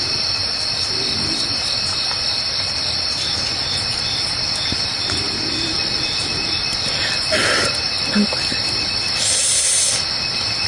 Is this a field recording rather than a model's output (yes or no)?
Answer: yes